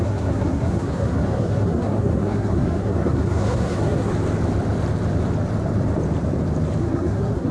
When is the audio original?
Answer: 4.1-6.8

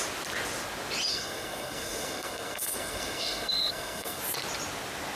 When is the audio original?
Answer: 0.0-1.1; 4.2-5.2